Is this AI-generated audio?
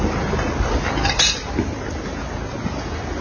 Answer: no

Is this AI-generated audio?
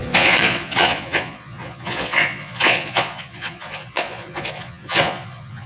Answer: yes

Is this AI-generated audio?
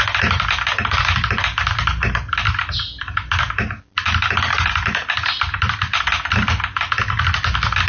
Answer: no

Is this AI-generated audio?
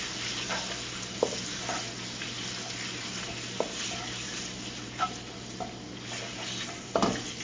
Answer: no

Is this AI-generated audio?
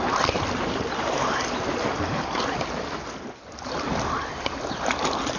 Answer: no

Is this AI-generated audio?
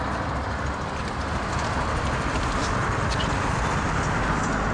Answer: no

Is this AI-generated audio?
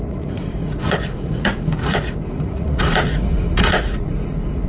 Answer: yes